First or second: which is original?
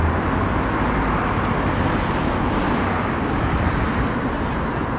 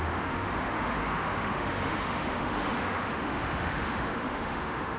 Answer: first